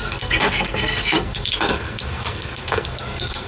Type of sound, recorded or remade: remade